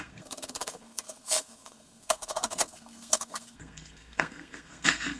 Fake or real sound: fake